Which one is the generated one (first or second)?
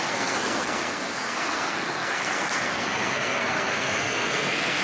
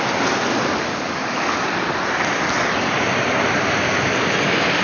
first